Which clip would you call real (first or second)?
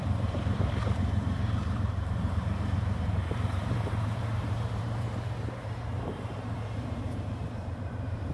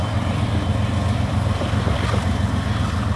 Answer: second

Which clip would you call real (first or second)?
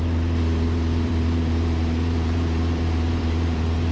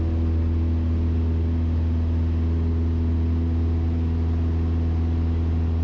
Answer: second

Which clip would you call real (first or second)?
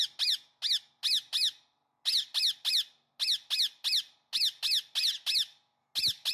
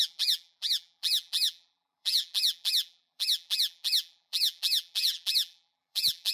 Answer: first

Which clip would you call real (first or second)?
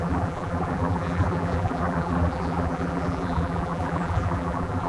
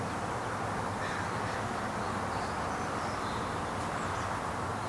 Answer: second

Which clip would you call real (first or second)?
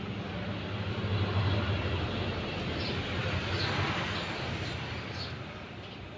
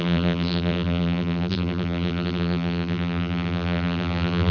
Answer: first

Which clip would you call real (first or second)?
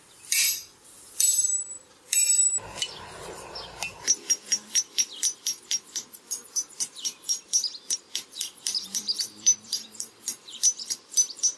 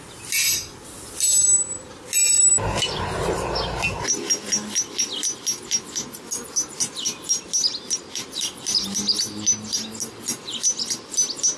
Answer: second